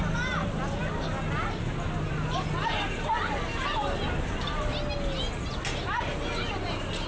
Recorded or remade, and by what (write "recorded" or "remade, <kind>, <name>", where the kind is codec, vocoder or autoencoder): recorded